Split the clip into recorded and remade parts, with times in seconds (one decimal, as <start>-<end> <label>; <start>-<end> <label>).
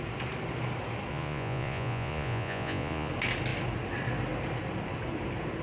0.0-1.1 recorded; 1.1-3.1 remade; 3.1-5.6 recorded